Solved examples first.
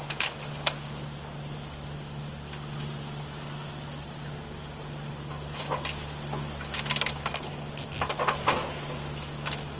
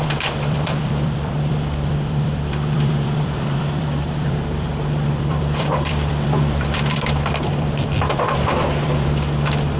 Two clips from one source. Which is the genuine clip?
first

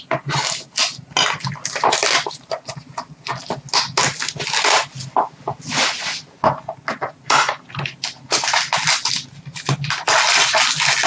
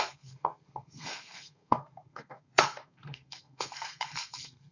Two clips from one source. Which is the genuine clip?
first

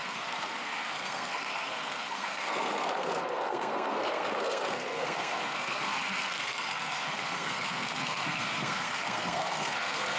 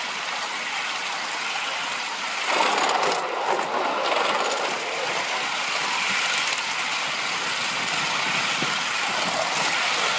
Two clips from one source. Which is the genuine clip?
second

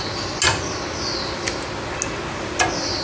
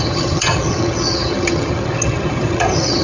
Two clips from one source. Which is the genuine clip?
first